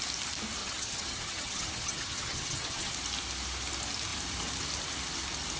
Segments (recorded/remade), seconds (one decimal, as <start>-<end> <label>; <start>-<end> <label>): 0.0-0.6 recorded; 0.6-2.9 remade; 2.9-5.6 recorded